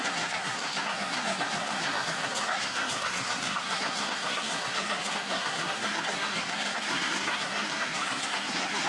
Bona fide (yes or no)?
no